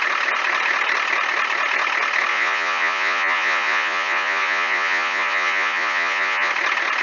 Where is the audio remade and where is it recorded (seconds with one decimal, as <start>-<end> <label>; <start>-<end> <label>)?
0.0-2.3 recorded; 2.3-6.5 remade; 6.5-7.0 recorded

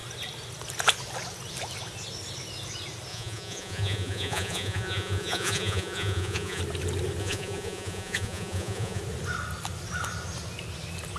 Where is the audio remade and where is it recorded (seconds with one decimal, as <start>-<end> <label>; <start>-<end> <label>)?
0.0-3.1 recorded; 3.1-6.6 remade; 6.6-7.2 recorded; 7.2-9.0 remade; 9.0-11.2 recorded

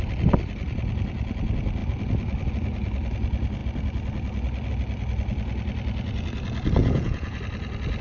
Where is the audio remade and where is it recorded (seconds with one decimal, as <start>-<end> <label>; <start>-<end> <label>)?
0.0-6.8 recorded; 6.8-7.4 remade; 7.4-8.0 recorded

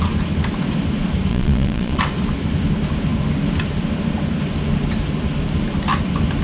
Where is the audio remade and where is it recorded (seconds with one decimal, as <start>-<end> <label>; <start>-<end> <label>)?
0.0-1.3 recorded; 1.3-2.0 remade; 2.0-6.4 recorded